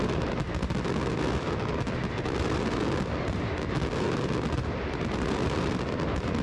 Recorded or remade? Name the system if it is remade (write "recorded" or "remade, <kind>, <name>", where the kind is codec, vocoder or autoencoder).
recorded